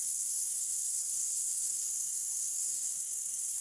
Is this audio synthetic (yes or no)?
yes